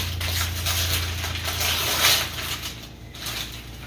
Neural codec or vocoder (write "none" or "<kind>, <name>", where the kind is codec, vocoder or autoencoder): none